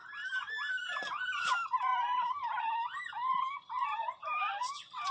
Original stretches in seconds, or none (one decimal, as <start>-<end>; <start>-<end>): 0.0-1.1; 1.9-5.1